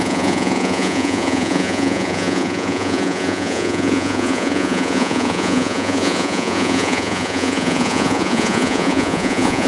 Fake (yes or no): yes